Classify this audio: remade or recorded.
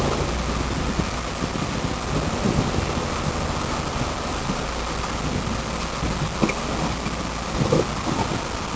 recorded